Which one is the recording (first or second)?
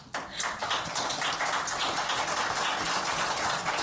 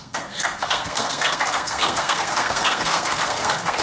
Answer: first